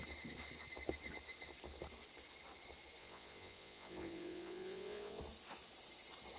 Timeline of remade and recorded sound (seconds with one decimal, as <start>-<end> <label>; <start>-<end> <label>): 0.0-3.0 recorded; 3.0-5.2 remade; 5.2-6.4 recorded